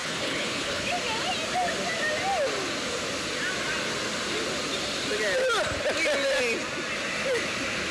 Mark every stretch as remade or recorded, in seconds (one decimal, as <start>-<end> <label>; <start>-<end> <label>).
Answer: 0.0-0.8 remade; 0.8-7.9 recorded